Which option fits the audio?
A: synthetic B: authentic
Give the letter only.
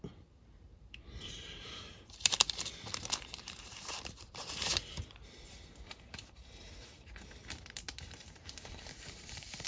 A